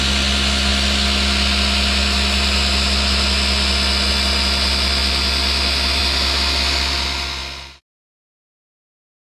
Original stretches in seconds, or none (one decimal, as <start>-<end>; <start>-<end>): 0.0-9.4